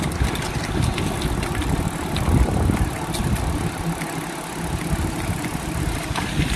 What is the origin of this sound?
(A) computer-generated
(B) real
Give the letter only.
B